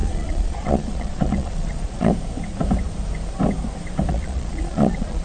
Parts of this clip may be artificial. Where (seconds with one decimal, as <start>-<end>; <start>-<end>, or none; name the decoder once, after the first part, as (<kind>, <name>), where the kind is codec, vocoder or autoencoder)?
0.0-2.1 (vocoder, Vocos); 4.1-5.2